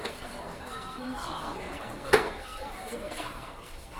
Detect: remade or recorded remade